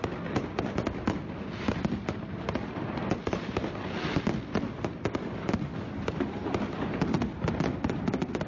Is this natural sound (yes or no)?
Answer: yes